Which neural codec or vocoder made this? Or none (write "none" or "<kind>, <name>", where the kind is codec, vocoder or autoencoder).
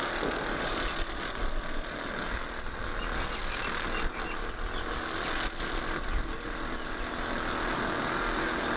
none